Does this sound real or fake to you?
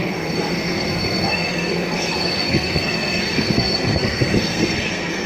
fake